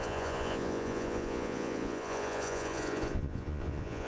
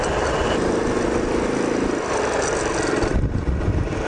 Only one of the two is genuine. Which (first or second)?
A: second